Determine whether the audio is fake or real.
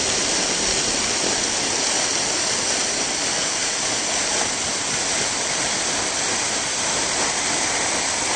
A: real